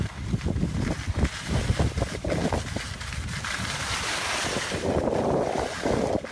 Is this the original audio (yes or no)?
yes